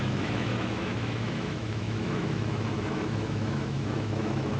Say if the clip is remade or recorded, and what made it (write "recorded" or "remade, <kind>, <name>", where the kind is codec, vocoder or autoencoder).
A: remade, autoencoder, DAC-VAE